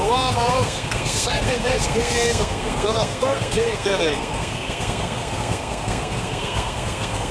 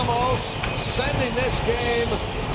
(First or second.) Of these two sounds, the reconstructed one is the first